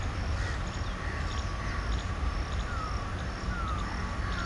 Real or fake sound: real